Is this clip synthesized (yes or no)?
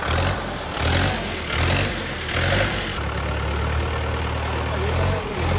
no